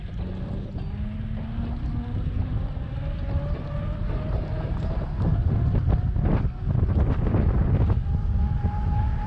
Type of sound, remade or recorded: recorded